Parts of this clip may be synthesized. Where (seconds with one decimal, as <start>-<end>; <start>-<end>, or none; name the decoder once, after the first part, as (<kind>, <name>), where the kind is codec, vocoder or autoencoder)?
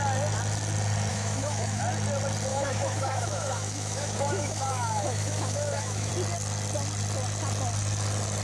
1.1-1.8 (autoencoder, DAC-VAE); 2.5-6.1